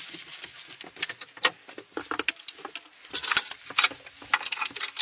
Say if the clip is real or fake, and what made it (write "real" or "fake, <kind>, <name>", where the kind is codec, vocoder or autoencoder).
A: real